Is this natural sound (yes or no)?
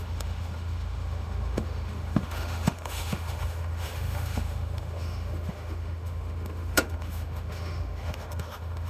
no